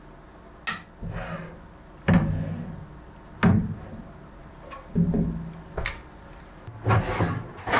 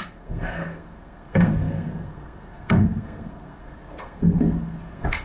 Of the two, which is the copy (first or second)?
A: second